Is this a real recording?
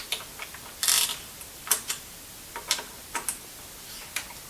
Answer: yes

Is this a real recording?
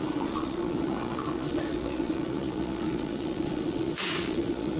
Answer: no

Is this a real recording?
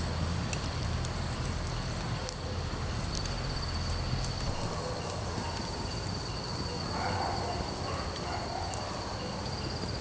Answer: yes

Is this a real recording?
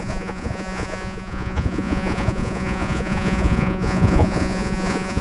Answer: no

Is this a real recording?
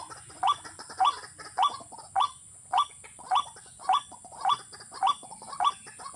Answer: no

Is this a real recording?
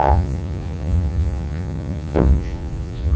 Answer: no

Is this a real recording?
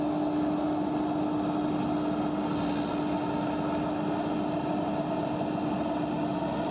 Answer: yes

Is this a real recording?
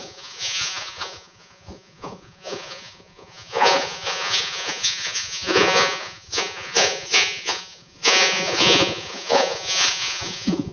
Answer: no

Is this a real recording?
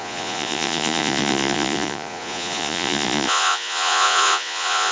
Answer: no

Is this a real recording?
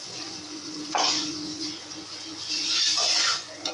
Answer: no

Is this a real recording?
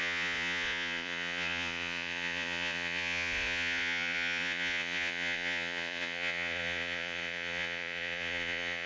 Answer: no